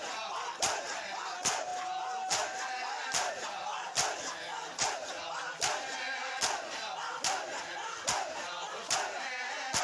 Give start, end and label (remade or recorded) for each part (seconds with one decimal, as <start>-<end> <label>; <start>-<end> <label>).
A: 0.0-9.8 recorded